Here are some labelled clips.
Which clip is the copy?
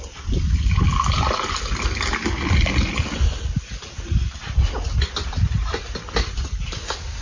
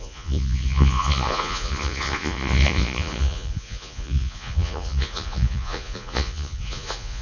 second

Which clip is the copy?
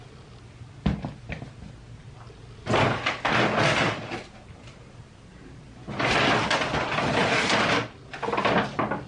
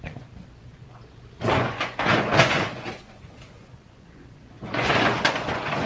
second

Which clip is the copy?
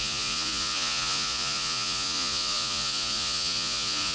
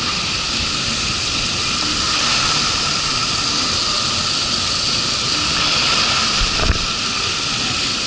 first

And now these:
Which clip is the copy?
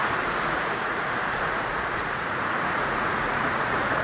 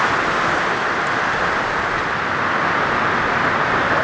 first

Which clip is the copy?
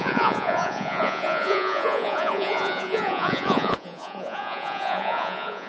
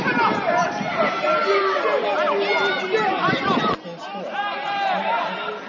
first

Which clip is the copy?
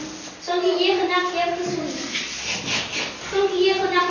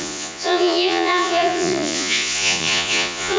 second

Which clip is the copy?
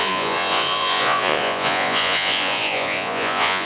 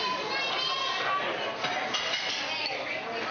first